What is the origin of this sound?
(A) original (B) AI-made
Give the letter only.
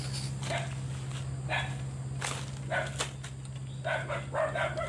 A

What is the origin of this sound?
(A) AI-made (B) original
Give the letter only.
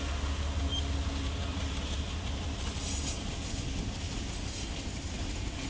B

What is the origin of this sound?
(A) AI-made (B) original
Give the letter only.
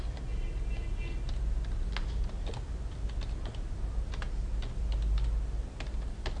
B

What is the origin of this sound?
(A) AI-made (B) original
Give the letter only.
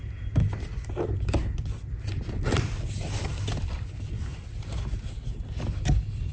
B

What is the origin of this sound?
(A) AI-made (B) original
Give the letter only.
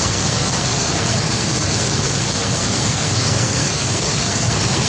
A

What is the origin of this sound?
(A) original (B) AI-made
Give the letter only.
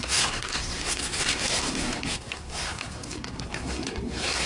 B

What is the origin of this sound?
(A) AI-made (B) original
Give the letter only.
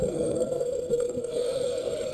A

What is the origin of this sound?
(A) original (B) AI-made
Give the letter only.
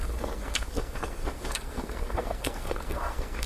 B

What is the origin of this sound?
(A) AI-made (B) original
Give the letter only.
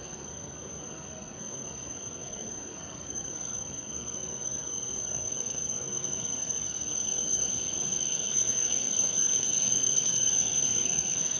A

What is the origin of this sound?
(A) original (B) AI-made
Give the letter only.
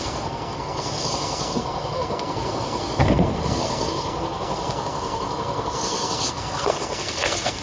B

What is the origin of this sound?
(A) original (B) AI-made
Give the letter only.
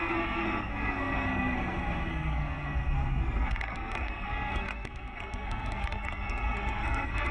B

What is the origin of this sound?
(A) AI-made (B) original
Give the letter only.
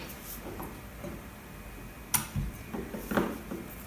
B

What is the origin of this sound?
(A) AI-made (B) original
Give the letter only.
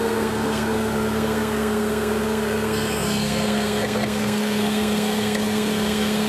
A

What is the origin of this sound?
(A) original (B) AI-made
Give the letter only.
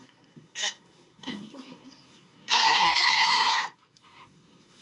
B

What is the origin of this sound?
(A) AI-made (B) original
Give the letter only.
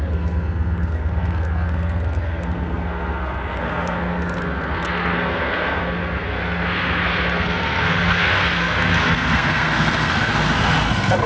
A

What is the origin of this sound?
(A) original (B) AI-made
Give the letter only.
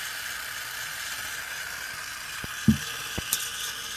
A